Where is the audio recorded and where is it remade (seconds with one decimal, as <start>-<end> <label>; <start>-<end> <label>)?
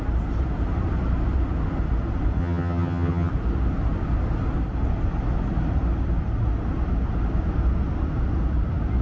0.0-2.4 recorded; 2.4-3.3 remade; 3.3-9.0 recorded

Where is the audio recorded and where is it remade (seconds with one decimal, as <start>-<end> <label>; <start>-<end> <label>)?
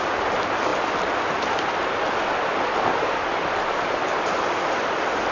0.0-5.3 recorded